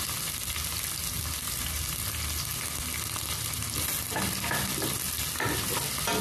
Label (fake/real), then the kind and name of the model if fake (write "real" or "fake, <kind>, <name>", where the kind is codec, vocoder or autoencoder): real